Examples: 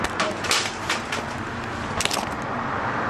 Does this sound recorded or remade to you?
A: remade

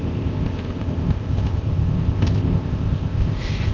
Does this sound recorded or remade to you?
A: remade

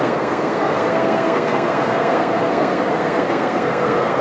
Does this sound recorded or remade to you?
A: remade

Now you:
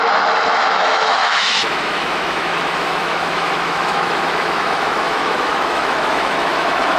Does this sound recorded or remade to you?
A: remade